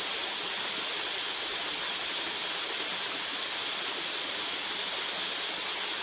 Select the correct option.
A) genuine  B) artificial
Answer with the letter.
A